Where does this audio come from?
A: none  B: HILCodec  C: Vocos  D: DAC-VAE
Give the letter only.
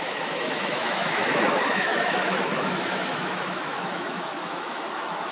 D